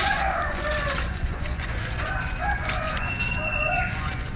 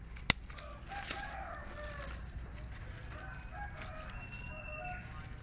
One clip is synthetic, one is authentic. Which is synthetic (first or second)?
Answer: first